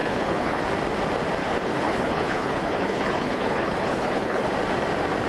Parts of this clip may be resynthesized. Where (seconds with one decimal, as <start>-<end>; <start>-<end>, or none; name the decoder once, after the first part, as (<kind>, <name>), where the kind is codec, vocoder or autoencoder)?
0.0-0.6 (codec, HILCodec); 1.4-4.5